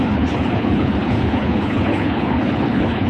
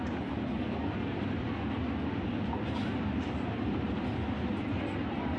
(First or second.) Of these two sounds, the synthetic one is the first